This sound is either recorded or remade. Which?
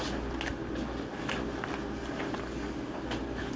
recorded